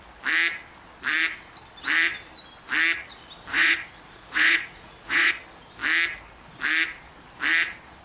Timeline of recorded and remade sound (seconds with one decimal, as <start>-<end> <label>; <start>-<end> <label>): 0.0-3.5 recorded; 3.5-5.3 remade; 5.3-8.0 recorded